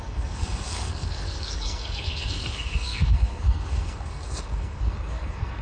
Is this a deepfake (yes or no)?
yes